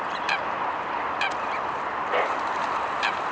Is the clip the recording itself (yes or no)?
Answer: yes